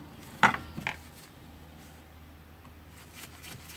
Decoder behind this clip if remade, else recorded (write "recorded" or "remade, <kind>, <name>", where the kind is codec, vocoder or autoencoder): recorded